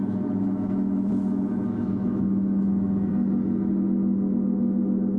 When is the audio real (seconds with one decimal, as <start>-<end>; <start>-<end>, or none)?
3.1-5.2